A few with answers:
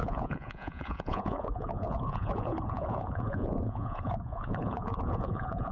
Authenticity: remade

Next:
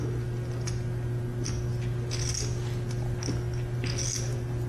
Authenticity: recorded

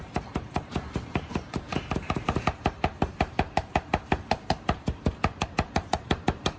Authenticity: remade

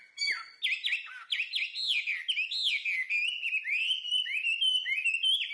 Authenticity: recorded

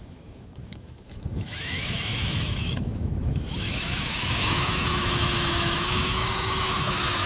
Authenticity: remade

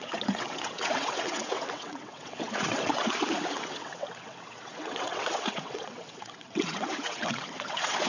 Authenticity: remade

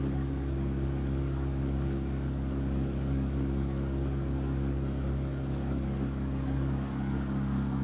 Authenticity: remade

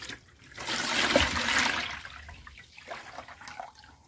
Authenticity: recorded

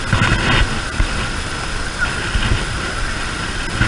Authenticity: recorded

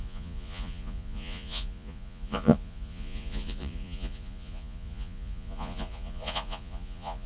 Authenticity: remade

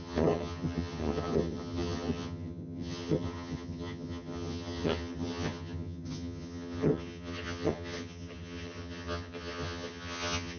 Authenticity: remade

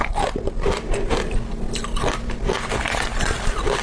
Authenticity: recorded